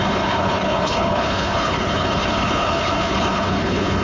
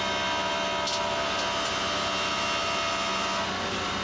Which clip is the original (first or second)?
second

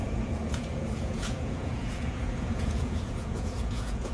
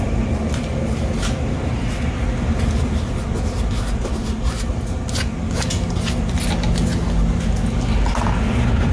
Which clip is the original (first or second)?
second